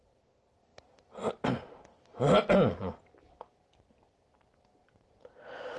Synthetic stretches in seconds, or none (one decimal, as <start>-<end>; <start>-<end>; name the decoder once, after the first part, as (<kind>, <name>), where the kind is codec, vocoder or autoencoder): none